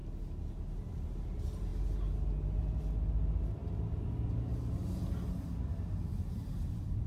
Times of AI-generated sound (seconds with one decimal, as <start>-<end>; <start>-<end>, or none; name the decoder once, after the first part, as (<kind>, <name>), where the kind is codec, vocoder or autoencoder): none